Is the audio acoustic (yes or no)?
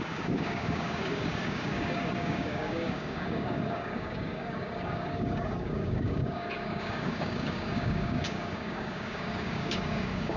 no